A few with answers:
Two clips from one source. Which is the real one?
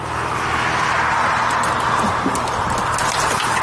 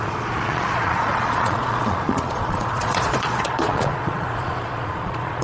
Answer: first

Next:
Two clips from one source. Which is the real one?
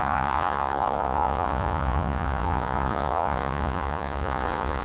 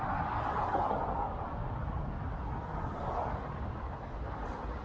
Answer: second